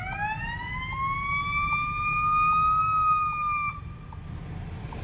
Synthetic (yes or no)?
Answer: no